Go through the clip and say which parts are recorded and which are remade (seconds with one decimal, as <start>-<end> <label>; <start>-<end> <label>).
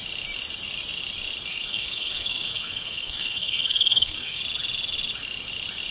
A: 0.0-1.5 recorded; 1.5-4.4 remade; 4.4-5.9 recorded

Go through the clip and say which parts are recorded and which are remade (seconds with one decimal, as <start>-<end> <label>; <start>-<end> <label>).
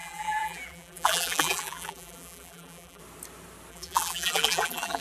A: 0.0-3.0 remade; 3.0-3.7 recorded; 3.7-5.0 remade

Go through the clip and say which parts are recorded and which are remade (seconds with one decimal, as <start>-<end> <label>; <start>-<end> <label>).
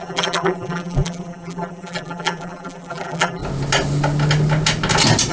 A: 0.0-3.4 remade; 3.4-5.3 recorded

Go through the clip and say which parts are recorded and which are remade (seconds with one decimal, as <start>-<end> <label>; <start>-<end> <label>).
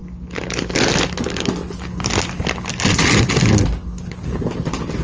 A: 0.0-5.0 recorded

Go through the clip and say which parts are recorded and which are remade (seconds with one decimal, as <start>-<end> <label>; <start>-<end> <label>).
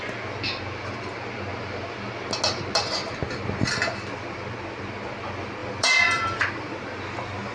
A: 0.0-5.6 recorded; 5.6-7.0 remade; 7.0-7.5 recorded